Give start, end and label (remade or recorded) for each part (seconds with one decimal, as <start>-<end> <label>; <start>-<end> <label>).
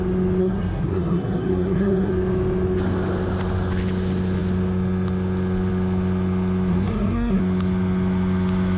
0.0-0.4 recorded; 0.4-2.1 remade; 2.1-6.7 recorded; 6.7-7.4 remade; 7.4-8.8 recorded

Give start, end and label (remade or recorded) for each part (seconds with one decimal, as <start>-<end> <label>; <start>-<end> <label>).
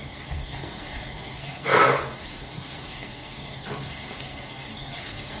0.0-5.4 remade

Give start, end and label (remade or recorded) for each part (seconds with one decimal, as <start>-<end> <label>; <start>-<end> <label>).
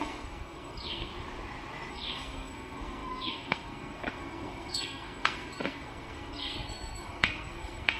0.0-1.1 remade; 1.1-1.9 recorded; 1.9-8.0 remade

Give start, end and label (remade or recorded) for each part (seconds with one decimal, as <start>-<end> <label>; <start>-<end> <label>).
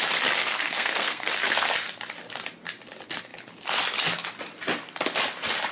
0.0-0.4 recorded; 0.4-1.7 remade; 1.7-5.7 recorded